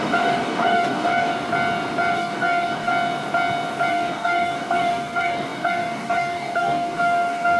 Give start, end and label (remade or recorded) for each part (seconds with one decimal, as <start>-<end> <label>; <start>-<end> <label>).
0.0-1.3 remade; 1.3-2.1 recorded; 2.1-2.9 remade; 2.9-3.9 recorded; 3.9-7.6 remade